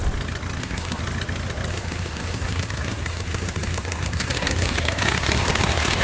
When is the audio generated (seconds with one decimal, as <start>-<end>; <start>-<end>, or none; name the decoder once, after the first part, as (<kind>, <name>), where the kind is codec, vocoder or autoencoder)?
0.6-1.0 (codec, SNAC); 1.7-6.0

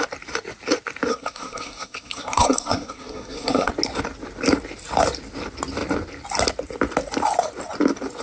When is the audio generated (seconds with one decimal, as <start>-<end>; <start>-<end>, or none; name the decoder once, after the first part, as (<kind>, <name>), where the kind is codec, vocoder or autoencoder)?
1.1-3.7 (codec, SNAC)

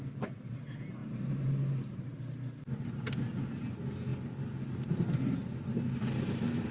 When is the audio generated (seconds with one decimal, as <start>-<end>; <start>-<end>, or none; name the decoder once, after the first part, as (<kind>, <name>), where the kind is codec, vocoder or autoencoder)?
1.0-1.5 (vocoder, BigVGAN v2)

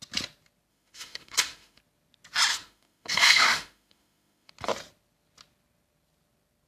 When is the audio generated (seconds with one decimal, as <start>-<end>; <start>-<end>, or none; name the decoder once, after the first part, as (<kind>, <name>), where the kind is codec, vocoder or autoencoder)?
0.7-1.8 (autoencoder, DAC-VAE); 2.5-4.5

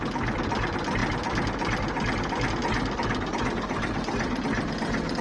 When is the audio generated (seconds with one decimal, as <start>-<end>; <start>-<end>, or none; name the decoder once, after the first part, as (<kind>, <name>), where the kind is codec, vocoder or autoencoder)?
none